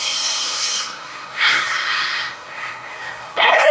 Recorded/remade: remade